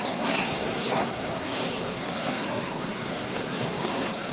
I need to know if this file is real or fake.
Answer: fake